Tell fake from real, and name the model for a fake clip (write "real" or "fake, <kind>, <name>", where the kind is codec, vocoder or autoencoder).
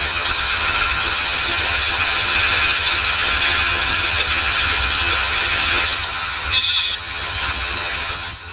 fake, vocoder, HiFi-GAN